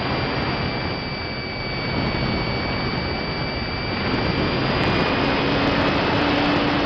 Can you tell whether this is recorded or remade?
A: recorded